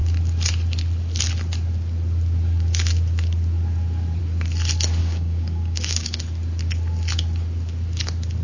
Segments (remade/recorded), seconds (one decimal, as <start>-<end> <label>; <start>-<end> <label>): 0.0-5.0 recorded; 5.0-6.2 remade; 6.2-8.4 recorded